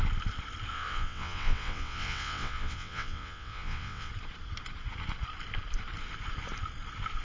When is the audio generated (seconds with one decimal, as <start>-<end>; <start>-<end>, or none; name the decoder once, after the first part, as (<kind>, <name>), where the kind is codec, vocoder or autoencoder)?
0.7-4.1 (vocoder, WaveNeXt)